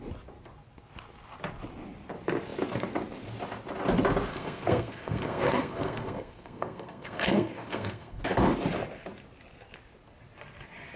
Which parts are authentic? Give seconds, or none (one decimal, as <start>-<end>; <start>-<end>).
0.0-4.3; 8.2-11.0